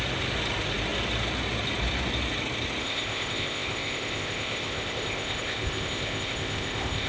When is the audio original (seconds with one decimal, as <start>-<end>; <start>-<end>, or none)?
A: 0.0-2.8